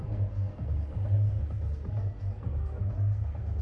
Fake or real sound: fake